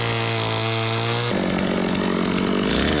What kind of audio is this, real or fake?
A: real